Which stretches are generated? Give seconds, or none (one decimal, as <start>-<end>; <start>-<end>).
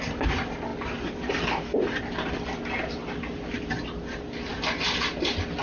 none